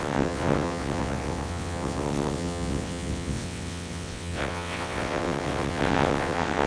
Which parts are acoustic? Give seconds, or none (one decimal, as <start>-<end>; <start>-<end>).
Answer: none